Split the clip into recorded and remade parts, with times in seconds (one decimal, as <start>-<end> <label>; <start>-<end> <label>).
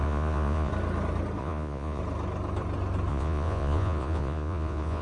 0.0-0.7 remade; 0.7-1.4 recorded; 1.4-2.0 remade; 2.0-3.1 recorded; 3.1-5.0 remade